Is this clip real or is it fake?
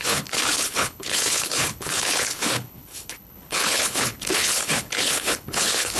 fake